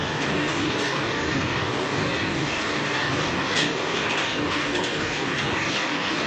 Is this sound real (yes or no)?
no